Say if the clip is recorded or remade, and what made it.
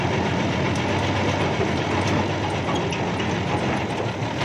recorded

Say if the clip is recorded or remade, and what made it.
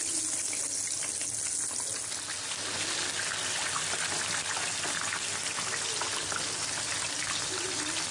recorded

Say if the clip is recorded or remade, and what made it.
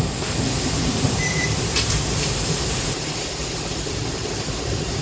remade, vocoder, BigVGAN v2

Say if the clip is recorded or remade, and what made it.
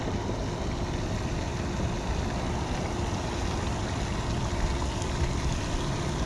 recorded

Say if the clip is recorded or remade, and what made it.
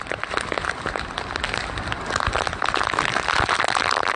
recorded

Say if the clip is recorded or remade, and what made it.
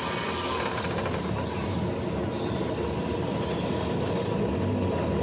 recorded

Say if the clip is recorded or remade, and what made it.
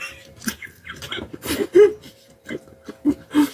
recorded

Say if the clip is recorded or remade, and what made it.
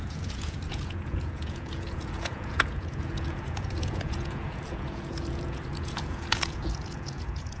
remade, vocoder, Vocos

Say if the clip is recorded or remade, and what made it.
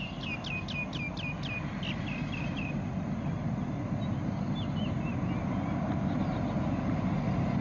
recorded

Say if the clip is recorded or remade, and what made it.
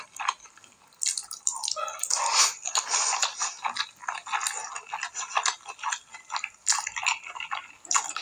recorded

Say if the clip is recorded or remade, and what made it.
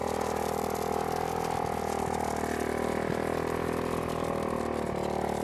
recorded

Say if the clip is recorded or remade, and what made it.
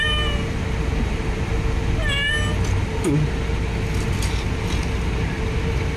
recorded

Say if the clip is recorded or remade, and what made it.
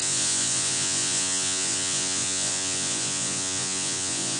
remade, vocoder, Vocos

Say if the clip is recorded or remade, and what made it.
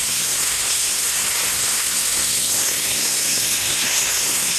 remade, codec, SNAC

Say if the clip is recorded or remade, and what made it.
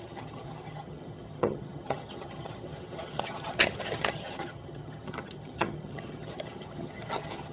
remade, vocoder, HiFi-GAN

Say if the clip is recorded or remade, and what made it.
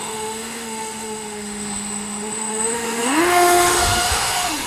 remade, autoencoder, DAC-VAE